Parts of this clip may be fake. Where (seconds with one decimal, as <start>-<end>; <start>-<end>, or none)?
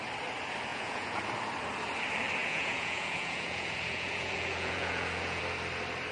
0.7-1.2; 2.4-5.4